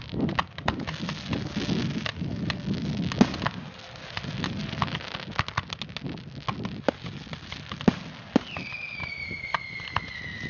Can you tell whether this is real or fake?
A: real